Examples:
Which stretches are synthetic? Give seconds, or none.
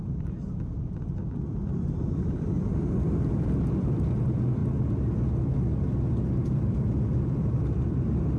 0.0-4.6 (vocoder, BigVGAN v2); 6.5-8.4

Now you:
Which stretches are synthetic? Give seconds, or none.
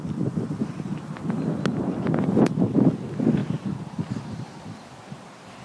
3.4-4.1 (vocoder, BigVGAN v2)